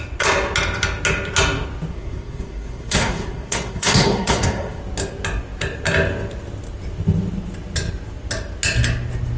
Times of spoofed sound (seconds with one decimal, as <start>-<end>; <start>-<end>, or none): 1.9-4.8